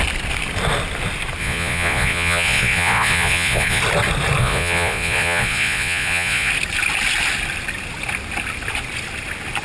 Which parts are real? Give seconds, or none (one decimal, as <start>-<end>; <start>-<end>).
0.0-1.4; 3.8-4.4; 6.5-9.6